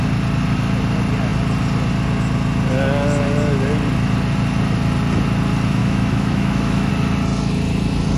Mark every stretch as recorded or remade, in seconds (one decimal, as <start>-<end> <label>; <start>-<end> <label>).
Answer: 0.0-5.8 recorded; 5.8-6.9 remade; 6.9-8.2 recorded